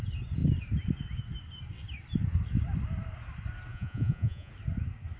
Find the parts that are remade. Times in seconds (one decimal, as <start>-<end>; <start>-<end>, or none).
3.7-4.5